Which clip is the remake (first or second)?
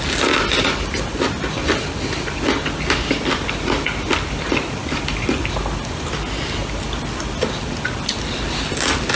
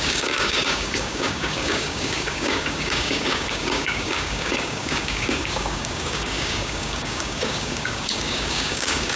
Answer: second